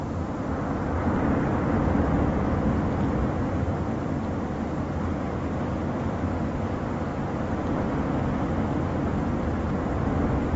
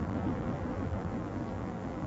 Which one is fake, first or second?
second